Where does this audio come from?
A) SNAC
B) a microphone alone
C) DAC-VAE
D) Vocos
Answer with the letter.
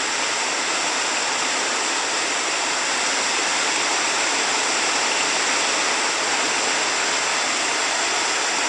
B